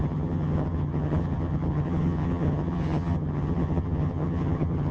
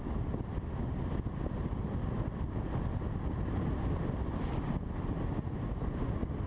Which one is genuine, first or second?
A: second